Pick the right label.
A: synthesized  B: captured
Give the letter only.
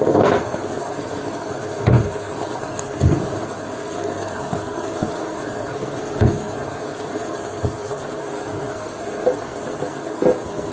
A